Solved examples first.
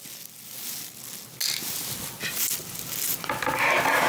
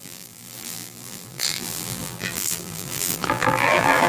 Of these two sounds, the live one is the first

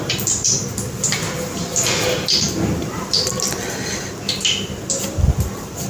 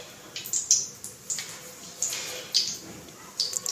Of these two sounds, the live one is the second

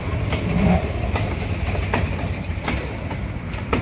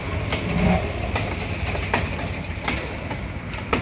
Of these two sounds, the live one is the second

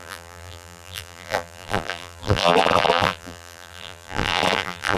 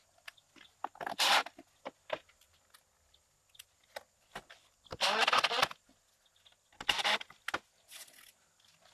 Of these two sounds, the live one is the second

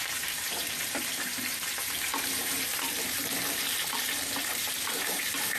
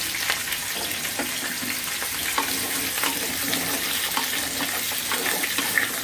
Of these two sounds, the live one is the second